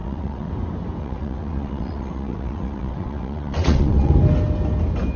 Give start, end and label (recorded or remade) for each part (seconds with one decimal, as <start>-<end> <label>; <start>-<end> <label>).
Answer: 0.0-0.5 remade; 0.5-1.0 recorded; 1.0-4.1 remade; 4.1-5.2 recorded